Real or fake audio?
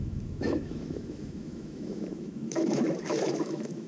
fake